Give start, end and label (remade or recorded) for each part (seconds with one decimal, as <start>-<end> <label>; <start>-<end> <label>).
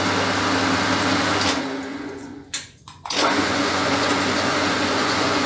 0.0-1.9 recorded; 1.9-5.5 remade